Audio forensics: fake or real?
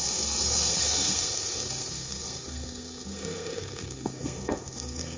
fake